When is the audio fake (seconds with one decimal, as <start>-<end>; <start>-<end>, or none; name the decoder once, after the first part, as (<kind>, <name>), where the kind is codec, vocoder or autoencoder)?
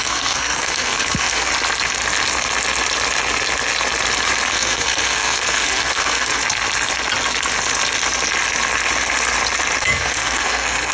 0.0-1.5 (codec, SNAC); 4.5-6.4; 9.8-10.9